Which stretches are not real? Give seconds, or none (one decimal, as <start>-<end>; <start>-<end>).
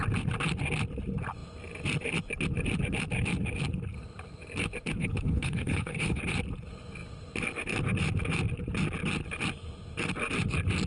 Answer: 5.0-6.2